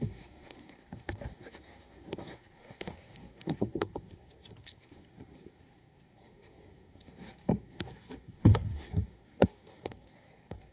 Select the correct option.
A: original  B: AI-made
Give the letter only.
B